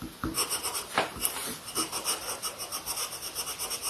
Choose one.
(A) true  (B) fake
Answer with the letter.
A